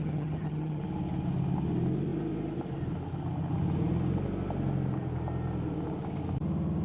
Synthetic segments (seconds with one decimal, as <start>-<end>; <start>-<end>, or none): 0.0-0.8